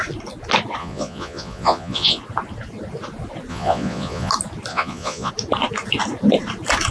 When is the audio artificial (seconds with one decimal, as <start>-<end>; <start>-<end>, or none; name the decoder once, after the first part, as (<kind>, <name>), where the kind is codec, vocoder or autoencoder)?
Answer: 0.8-2.2 (vocoder, Vocos); 3.5-4.3; 4.7-5.3